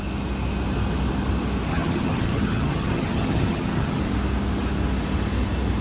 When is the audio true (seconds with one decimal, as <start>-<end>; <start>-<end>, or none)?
0.0-1.7; 4.0-5.8